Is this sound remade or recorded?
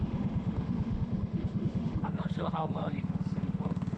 remade